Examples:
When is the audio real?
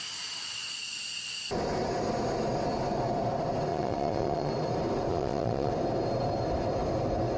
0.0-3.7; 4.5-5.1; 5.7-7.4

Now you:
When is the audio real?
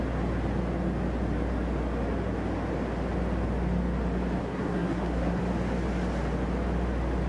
0.0-4.4; 5.4-7.3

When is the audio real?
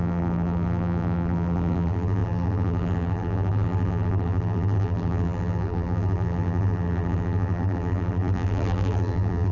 none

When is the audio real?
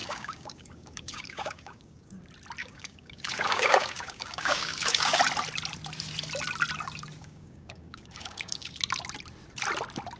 2.2-2.6; 5.2-7.2; 8.8-10.2